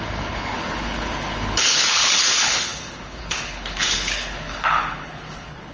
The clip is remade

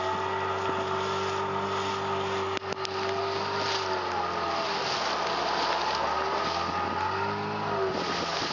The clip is recorded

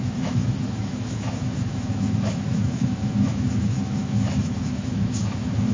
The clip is remade